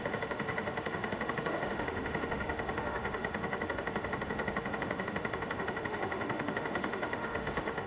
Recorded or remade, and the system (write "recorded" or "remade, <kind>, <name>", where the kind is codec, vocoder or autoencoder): remade, autoencoder, DAC-VAE